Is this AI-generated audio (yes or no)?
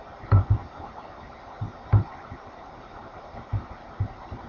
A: yes